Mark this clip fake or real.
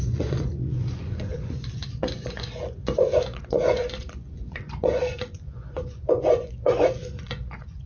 fake